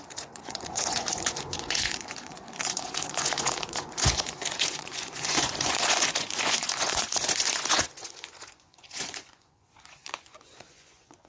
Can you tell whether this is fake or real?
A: fake